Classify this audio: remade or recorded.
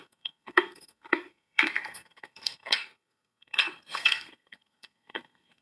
remade